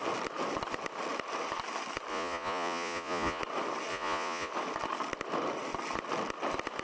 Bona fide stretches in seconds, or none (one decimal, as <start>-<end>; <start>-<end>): 0.0-2.1; 3.4-3.9; 4.5-6.8